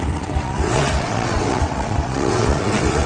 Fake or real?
fake